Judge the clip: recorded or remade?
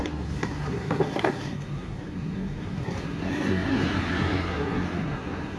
remade